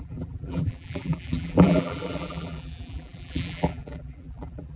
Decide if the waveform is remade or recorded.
remade